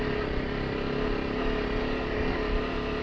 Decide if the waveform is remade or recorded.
recorded